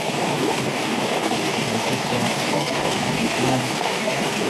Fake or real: fake